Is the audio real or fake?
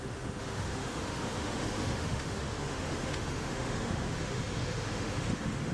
fake